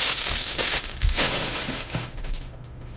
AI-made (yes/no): yes